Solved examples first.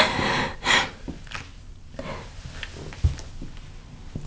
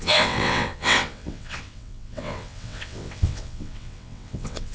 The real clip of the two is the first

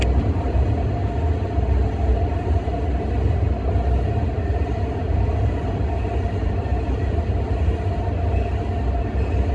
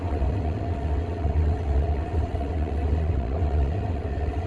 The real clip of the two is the first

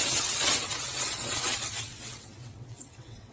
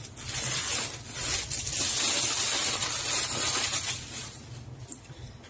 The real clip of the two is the second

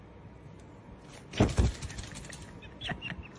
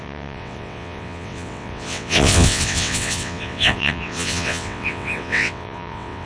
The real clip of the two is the first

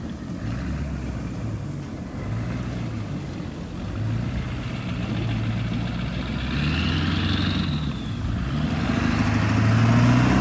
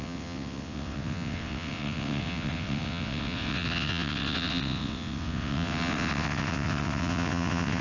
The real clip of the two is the first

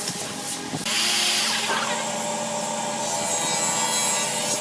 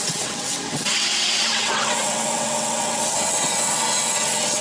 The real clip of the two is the first